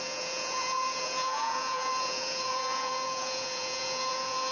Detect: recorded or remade remade